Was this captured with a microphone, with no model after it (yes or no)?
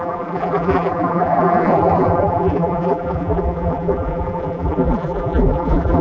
no